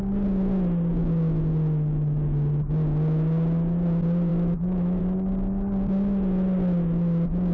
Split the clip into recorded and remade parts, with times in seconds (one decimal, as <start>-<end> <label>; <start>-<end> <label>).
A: 0.0-4.3 recorded; 4.3-5.0 remade; 5.0-7.5 recorded